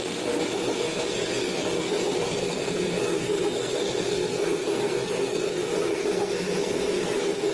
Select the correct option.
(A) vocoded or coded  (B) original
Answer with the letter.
A